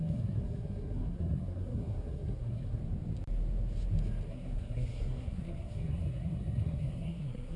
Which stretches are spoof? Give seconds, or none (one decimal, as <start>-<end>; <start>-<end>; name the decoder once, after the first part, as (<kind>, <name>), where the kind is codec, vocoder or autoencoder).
0.0-2.8 (codec, SNAC); 4.3-7.6